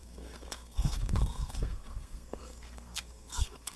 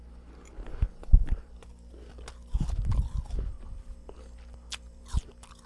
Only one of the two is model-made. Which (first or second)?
first